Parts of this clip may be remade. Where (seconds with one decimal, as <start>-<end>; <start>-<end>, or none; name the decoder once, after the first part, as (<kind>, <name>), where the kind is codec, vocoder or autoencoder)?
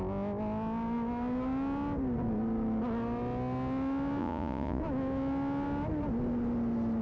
4.2-4.8 (vocoder, Vocos)